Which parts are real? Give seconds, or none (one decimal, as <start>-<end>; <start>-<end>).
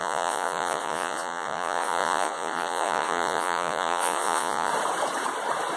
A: 4.7-5.8